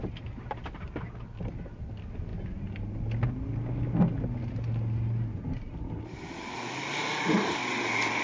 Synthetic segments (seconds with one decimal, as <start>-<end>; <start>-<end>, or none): none